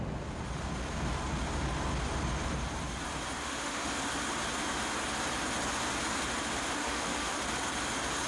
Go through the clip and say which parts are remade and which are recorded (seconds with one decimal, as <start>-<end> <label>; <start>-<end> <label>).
0.0-3.4 recorded; 3.4-3.9 remade; 3.9-6.8 recorded; 6.8-7.4 remade; 7.4-8.3 recorded